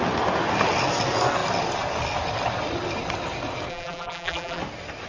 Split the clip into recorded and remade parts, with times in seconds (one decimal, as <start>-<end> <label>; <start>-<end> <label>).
0.0-3.7 recorded; 3.7-4.6 remade; 4.6-5.1 recorded